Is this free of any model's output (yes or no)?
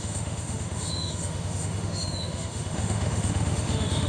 no